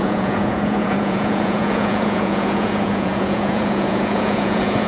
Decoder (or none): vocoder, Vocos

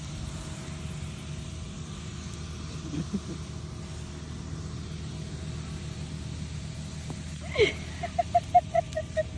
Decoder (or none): none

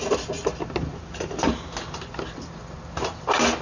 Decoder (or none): none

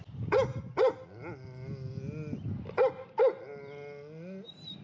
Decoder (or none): none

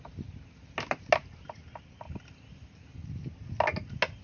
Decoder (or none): none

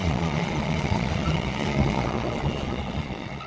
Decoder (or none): vocoder, Vocos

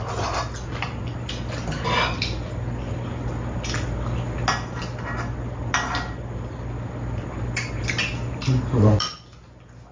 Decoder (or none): none